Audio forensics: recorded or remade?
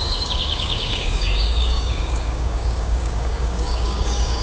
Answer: remade